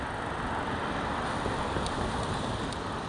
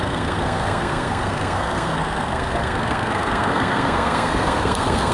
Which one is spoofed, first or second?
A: second